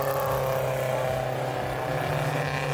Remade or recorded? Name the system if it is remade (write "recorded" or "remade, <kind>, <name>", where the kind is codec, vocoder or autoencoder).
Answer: recorded